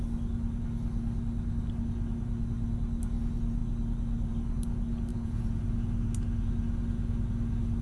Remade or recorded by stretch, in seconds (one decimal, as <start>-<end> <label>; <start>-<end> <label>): 0.0-5.1 recorded; 5.1-5.6 remade; 5.6-7.8 recorded